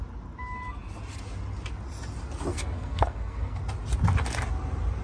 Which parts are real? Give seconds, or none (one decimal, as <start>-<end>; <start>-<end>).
0.0-2.5; 3.6-5.0